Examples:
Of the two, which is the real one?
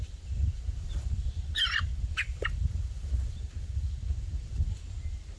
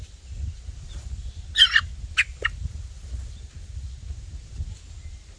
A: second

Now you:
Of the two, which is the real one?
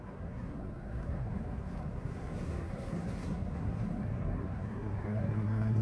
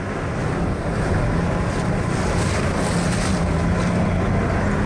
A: second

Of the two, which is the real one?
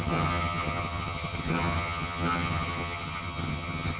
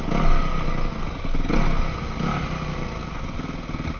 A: second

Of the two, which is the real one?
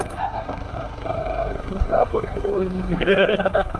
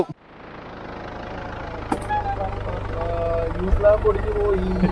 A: second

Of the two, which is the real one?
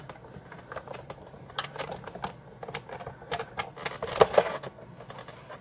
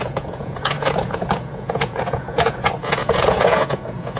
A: first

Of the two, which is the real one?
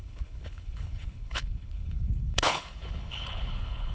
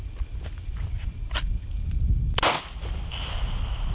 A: second